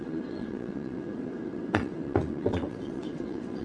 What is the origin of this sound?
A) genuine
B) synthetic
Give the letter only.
B